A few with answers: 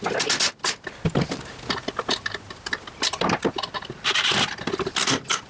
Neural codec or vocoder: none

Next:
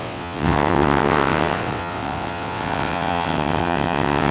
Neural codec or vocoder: vocoder, WaveNeXt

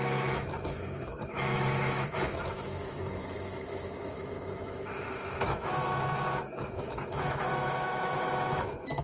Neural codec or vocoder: autoencoder, DAC-VAE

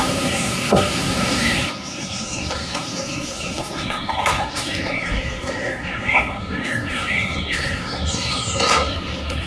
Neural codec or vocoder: codec, SNAC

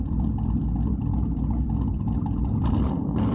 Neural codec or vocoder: vocoder, BigVGAN v2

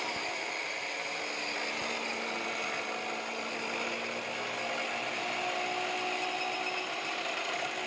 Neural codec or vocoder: none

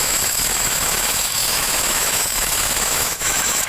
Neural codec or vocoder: autoencoder, DAC-VAE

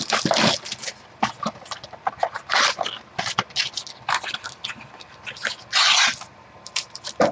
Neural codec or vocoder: none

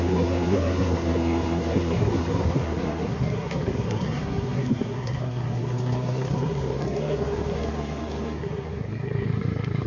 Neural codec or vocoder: codec, SNAC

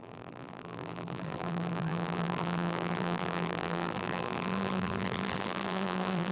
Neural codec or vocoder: vocoder, BigVGAN v2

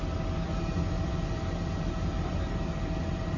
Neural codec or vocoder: none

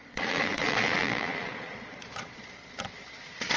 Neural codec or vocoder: vocoder, Vocos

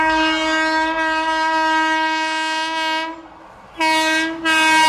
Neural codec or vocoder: none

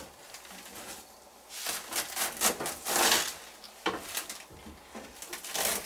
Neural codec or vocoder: none